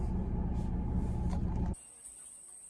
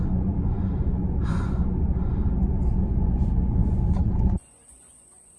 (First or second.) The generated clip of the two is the second